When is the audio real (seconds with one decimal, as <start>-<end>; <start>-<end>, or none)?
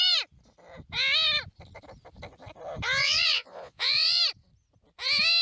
0.0-3.0; 4.2-5.4